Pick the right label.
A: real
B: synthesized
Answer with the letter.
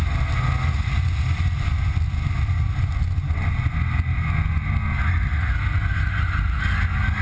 A